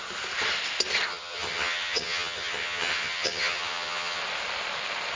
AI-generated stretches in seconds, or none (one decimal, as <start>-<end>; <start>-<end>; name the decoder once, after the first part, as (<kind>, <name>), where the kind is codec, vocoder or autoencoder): 1.1-4.2 (vocoder, HiFi-GAN)